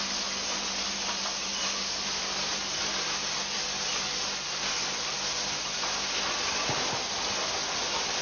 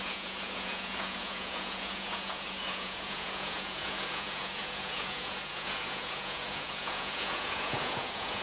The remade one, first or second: second